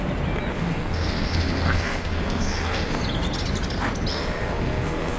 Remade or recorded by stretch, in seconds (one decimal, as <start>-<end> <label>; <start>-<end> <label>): 0.0-0.5 recorded; 0.5-3.0 remade; 3.0-4.1 recorded; 4.1-5.2 remade